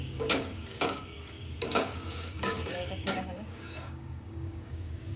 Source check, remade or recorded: remade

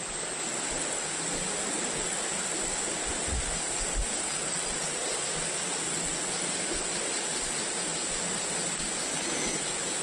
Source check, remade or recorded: recorded